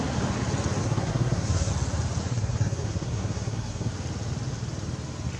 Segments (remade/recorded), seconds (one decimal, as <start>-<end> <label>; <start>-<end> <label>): 0.0-0.8 recorded; 0.8-1.7 remade; 1.7-2.2 recorded; 2.2-3.9 remade; 3.9-5.4 recorded